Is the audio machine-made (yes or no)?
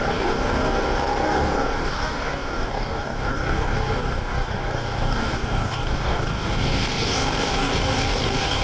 yes